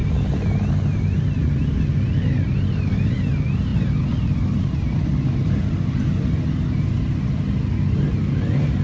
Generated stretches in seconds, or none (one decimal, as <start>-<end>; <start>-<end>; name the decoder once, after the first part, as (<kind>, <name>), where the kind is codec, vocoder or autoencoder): none